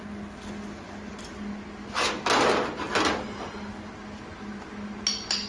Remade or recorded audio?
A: recorded